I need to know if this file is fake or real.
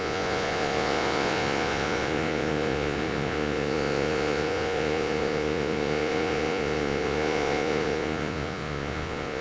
fake